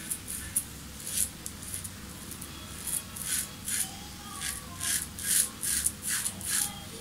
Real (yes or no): yes